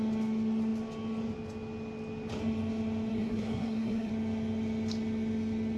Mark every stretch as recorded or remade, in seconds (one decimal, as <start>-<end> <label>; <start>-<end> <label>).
0.0-3.1 recorded; 3.1-4.1 remade; 4.1-5.8 recorded